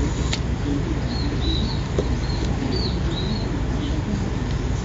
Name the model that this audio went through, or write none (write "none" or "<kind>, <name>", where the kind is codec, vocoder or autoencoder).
none